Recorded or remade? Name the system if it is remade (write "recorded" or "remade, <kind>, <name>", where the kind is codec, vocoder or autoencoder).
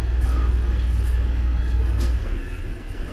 remade, codec, SNAC